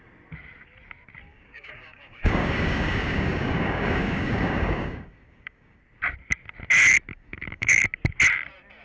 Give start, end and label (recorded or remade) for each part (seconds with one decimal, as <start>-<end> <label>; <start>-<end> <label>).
0.0-1.3 recorded; 1.3-5.8 remade; 5.8-7.1 recorded; 7.1-7.8 remade; 7.8-8.8 recorded